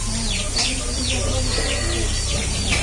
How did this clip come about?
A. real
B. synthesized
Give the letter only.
A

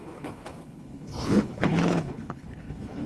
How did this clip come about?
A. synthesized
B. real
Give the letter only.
A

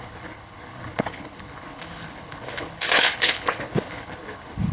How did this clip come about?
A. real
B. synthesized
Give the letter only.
B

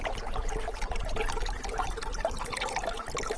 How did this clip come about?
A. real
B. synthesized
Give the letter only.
A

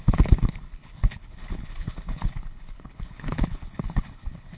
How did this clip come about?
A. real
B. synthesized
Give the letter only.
B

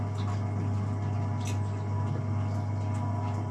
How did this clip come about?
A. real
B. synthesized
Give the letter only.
A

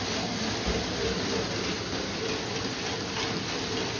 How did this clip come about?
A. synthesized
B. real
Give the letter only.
B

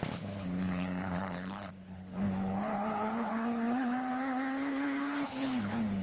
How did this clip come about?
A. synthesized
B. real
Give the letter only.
A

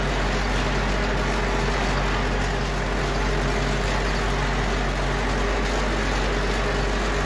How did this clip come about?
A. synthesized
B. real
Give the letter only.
B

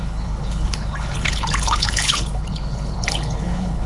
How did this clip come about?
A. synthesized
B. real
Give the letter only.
A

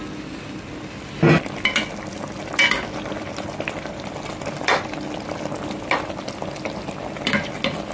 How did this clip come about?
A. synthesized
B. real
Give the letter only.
B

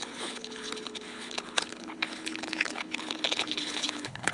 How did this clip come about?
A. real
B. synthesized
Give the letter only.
B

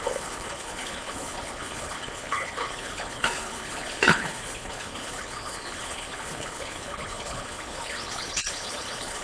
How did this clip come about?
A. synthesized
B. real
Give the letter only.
A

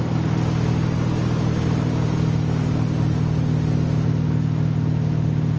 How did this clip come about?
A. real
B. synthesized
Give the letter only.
A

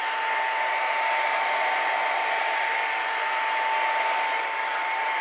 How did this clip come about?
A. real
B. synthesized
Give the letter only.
A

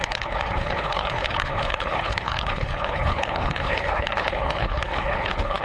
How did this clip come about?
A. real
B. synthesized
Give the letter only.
B